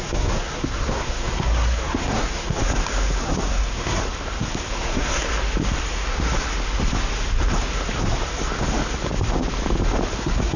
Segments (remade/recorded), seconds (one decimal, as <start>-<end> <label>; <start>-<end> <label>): 0.0-2.6 remade; 2.6-3.2 recorded; 3.2-4.0 remade; 4.0-4.7 recorded; 4.7-5.3 remade; 5.3-10.2 recorded; 10.2-10.6 remade